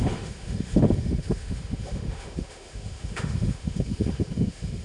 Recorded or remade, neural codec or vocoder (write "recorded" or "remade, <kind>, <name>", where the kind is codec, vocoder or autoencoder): remade, autoencoder, DAC-VAE